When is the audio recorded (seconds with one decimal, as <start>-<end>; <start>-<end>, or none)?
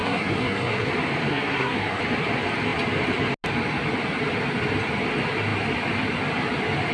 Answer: 0.9-1.3; 2.0-6.9